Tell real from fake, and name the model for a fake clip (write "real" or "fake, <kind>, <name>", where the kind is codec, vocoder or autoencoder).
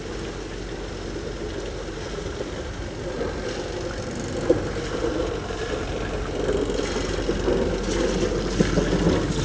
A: real